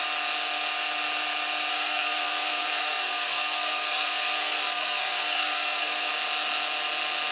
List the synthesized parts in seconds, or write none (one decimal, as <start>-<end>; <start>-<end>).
1.7-6.1